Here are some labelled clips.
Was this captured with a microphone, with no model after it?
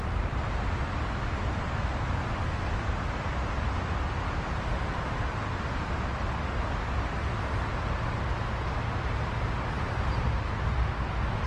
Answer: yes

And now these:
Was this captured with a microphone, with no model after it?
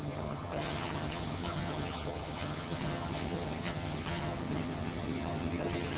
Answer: no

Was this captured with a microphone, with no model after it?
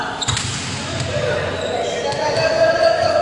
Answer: yes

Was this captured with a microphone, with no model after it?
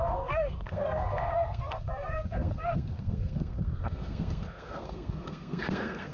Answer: no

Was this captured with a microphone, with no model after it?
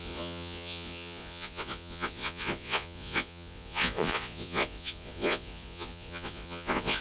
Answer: no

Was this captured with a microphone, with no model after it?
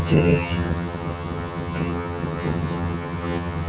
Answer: no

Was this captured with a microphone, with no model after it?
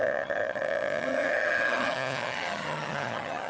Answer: no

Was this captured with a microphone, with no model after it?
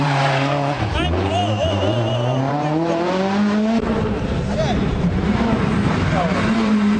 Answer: no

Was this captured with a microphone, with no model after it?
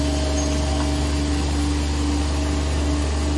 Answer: yes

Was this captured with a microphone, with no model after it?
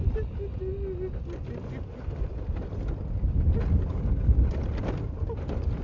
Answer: yes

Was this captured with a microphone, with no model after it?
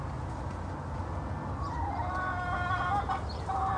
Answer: yes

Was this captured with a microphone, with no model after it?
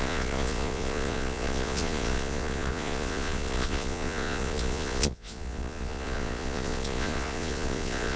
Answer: no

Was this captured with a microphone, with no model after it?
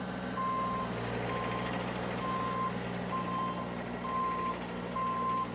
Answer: yes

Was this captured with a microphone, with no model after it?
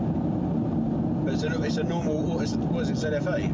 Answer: yes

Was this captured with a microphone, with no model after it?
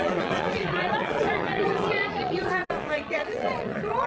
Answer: no